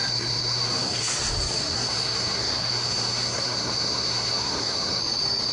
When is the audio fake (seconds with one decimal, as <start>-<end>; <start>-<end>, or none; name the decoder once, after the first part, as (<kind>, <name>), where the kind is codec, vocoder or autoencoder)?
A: 0.0-1.0 (codec, SNAC); 1.7-5.0